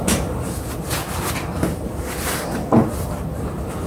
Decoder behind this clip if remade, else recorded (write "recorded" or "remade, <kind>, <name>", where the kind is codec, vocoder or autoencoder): recorded